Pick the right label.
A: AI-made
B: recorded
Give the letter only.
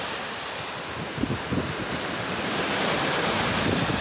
B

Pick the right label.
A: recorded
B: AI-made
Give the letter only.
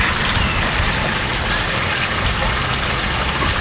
A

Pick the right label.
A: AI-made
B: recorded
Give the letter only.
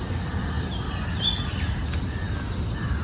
B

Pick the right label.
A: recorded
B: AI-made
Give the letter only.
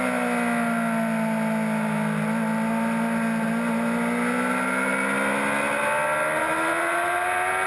A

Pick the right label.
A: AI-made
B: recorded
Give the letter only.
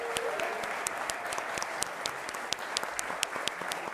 B